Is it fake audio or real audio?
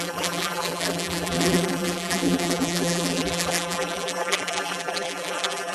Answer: fake